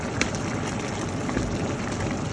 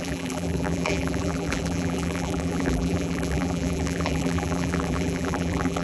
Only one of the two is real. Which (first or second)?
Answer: first